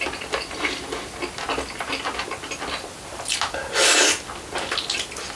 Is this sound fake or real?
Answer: real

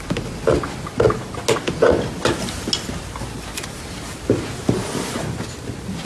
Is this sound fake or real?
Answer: real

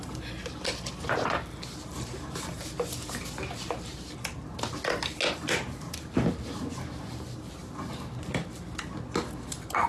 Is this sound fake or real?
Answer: real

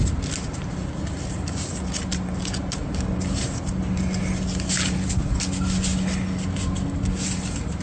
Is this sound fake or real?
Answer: real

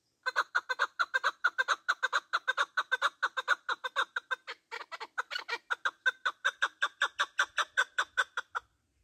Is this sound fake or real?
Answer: real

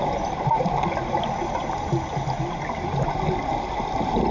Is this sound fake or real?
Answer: real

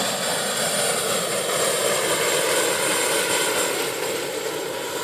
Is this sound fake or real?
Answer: real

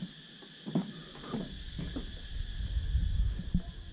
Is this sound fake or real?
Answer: real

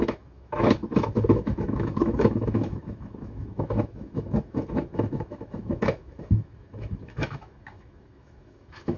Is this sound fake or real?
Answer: fake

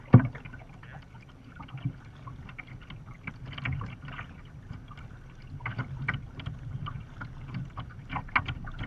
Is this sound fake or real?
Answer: real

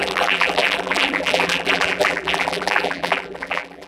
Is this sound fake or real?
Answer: fake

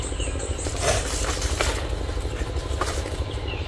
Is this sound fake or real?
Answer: real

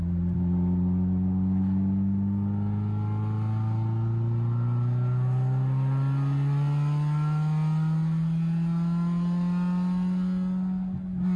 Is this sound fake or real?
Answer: real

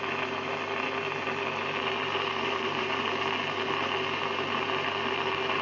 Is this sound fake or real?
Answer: real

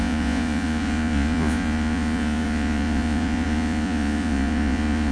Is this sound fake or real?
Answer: fake